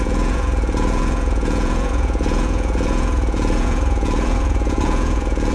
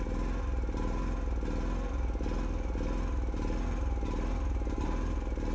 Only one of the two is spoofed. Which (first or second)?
first